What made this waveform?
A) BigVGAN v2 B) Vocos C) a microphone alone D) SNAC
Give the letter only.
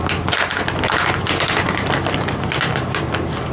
C